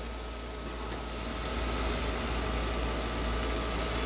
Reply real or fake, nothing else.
real